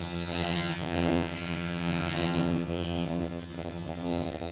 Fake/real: fake